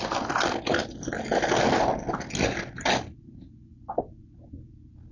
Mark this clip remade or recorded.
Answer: recorded